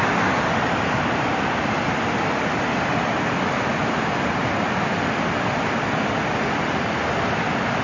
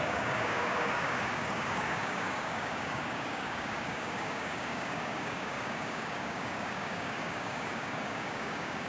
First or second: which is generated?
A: second